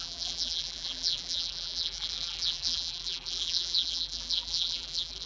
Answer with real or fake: fake